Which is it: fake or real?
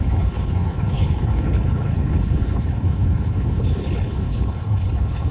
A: fake